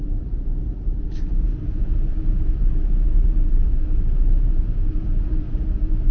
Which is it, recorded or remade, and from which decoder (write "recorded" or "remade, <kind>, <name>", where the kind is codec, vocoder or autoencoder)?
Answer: remade, vocoder, BigVGAN v2